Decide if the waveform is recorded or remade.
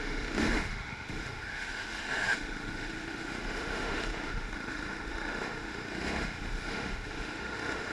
remade